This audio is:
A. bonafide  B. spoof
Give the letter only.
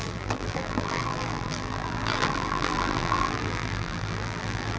B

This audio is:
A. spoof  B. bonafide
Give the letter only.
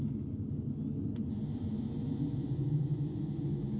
B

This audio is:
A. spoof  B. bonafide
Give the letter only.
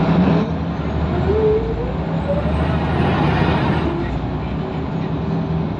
B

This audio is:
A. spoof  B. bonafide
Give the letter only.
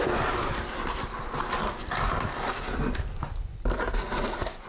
B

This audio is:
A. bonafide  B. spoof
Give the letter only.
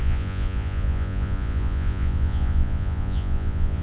B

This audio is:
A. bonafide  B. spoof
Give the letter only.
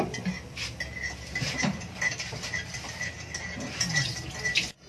A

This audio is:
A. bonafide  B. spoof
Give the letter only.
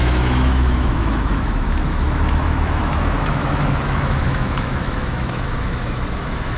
B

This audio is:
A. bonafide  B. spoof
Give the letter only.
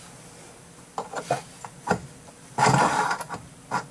A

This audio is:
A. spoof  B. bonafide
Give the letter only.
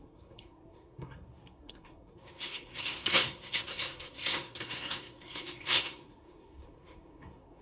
A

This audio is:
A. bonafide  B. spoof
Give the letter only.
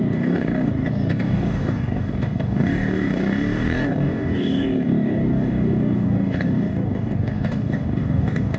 B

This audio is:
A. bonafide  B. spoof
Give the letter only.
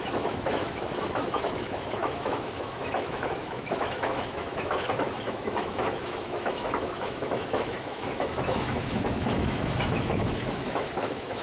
B